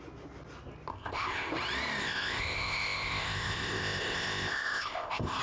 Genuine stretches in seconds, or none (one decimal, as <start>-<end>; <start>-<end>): 0.0-0.9; 1.5-2.0